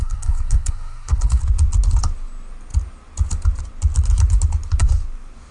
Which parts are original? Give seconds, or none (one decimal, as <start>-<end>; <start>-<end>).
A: 1.4-5.5